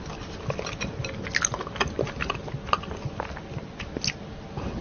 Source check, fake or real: real